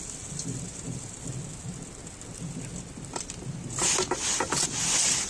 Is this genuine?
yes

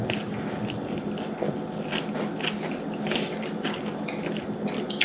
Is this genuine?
yes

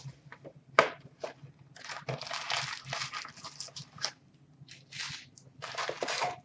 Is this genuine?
yes